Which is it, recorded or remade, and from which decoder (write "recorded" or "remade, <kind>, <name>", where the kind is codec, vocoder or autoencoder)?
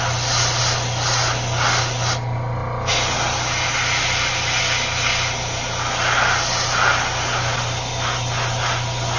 recorded